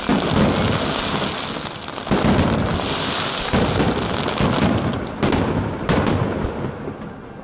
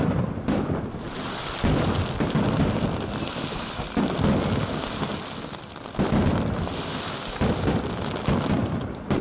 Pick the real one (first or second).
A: first